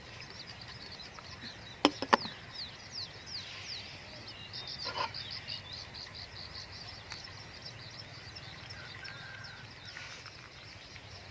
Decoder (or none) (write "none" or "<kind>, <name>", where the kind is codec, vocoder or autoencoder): none